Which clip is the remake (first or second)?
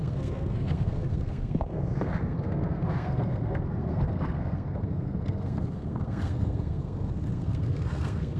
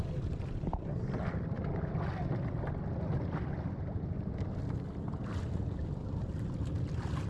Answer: first